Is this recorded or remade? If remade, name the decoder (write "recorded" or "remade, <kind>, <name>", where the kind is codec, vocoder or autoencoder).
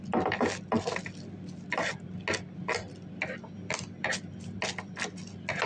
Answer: recorded